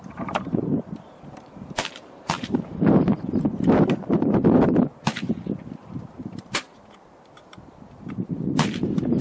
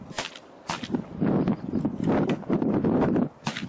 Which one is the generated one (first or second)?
first